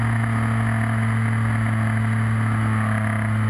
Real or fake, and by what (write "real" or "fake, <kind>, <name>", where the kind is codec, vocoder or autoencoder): real